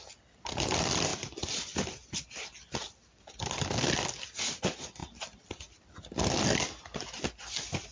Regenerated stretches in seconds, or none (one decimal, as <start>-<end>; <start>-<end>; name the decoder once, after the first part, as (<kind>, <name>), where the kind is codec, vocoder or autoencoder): 1.1-3.6 (vocoder, BigVGAN v2); 5.0-6.4